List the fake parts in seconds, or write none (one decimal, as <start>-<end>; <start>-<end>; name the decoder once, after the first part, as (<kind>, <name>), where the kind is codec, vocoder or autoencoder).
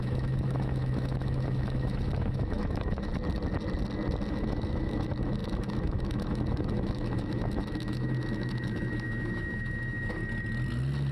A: 0.0-3.1 (autoencoder, DAC-VAE); 4.3-10.2